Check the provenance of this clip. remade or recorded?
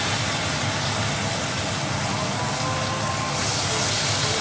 recorded